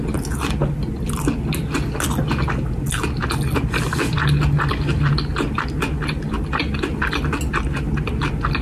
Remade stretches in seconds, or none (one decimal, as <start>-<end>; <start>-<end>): none